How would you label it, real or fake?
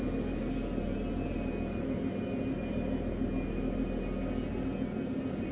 real